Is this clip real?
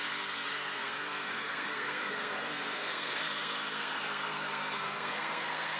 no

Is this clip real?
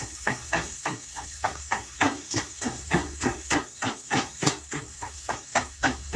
no